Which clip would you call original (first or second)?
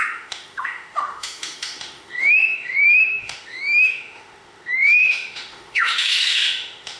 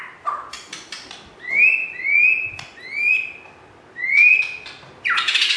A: second